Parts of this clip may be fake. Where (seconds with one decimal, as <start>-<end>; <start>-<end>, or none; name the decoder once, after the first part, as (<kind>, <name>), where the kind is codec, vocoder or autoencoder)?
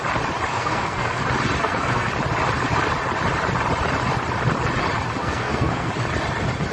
0.5-1.2 (codec, SNAC); 1.6-2.1; 5.2-5.9